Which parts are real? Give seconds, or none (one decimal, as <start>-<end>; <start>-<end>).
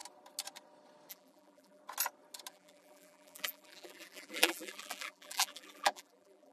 0.0-1.1; 1.8-2.5